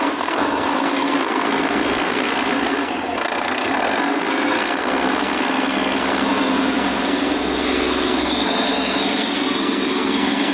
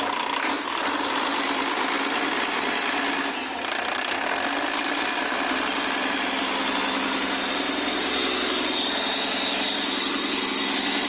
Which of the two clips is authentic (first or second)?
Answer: second